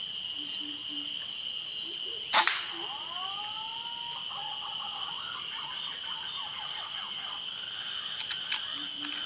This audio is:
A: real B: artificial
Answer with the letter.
A